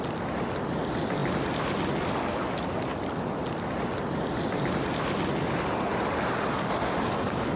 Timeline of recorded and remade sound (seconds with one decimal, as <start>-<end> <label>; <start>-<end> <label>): 0.0-7.6 recorded